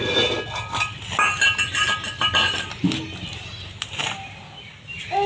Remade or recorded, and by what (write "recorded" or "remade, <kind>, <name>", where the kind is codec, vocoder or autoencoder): recorded